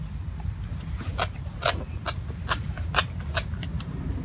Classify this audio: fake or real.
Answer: real